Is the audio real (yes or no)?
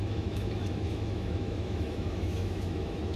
no